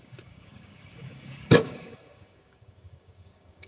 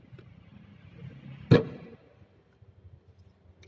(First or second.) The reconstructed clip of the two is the first